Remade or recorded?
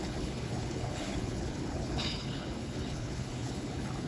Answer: remade